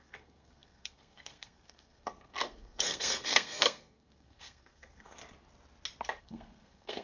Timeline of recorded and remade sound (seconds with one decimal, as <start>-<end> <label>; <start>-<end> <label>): 0.0-5.2 remade; 5.2-6.2 recorded; 6.2-7.0 remade